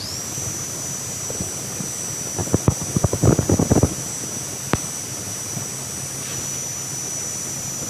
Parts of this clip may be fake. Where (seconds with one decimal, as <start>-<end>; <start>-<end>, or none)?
none